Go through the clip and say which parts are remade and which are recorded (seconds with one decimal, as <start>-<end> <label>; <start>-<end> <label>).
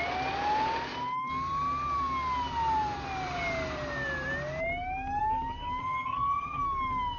0.0-5.8 recorded; 5.8-6.6 remade; 6.6-7.2 recorded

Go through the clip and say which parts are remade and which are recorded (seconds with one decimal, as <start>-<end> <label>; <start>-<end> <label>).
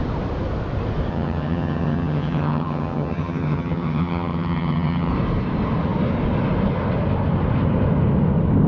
0.0-1.1 recorded; 1.1-5.1 remade; 5.1-8.7 recorded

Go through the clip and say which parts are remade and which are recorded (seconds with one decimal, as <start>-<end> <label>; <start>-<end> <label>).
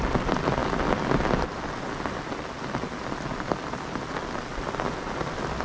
0.0-5.6 recorded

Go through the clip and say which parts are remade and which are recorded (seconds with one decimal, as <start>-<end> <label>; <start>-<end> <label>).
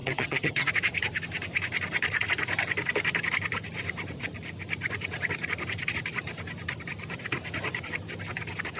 0.0-0.7 remade; 0.7-8.8 recorded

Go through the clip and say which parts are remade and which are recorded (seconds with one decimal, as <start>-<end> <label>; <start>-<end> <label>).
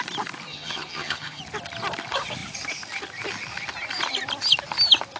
0.0-0.5 recorded; 0.5-1.4 remade; 1.4-5.2 recorded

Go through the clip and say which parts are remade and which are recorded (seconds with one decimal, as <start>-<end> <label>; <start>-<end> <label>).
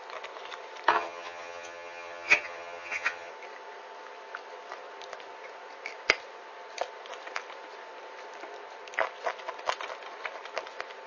0.0-0.9 recorded; 0.9-3.3 remade; 3.3-11.1 recorded